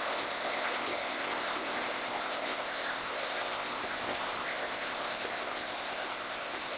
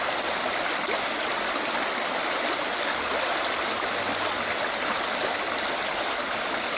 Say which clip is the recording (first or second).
second